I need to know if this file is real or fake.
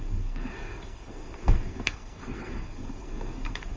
fake